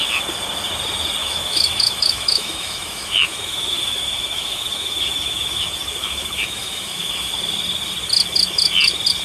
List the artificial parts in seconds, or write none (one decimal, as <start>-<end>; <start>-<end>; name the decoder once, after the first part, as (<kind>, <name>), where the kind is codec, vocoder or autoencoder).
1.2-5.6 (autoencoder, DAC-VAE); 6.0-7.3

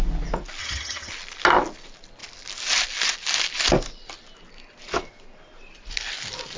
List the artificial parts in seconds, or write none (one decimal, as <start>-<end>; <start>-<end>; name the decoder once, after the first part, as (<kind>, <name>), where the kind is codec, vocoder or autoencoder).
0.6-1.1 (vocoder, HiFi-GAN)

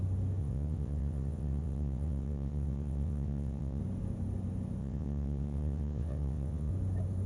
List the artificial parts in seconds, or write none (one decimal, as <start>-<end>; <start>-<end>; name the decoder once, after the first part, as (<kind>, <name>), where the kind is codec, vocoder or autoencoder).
0.4-3.8 (vocoder, WaveNeXt); 4.8-6.7

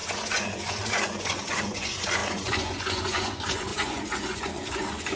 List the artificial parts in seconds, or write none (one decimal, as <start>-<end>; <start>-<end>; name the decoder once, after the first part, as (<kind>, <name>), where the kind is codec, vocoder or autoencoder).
0.0-5.2 (vocoder, Vocos)

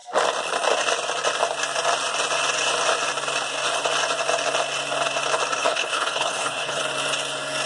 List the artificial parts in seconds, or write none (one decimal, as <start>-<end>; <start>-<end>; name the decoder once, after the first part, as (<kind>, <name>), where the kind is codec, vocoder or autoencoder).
5.6-6.8 (codec, HILCodec)

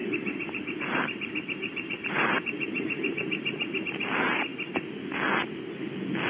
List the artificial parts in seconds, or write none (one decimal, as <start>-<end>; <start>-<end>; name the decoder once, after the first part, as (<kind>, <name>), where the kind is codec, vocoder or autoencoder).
0.0-3.8 (vocoder, BigVGAN v2)

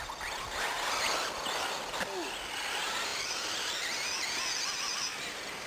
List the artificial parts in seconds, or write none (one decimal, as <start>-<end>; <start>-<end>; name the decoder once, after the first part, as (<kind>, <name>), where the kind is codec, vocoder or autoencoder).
none

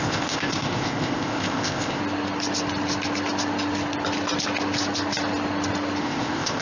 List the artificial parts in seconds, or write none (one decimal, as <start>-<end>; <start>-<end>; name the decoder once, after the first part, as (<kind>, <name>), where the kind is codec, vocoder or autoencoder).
0.0-2.0 (codec, ZipCodec); 6.0-6.6